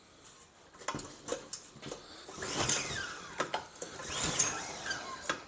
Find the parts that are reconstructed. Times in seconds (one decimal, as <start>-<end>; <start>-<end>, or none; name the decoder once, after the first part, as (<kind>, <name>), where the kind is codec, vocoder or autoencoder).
none